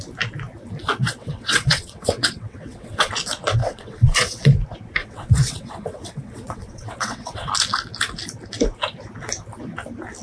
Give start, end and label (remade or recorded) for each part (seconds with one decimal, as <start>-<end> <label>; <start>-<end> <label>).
0.0-1.0 recorded; 1.0-3.1 remade; 3.1-3.6 recorded; 3.6-4.5 remade; 4.5-5.0 recorded; 5.0-7.5 remade; 7.5-10.2 recorded